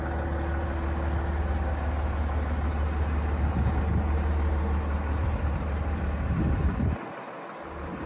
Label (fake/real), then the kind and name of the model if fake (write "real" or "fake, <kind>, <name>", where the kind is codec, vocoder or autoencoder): real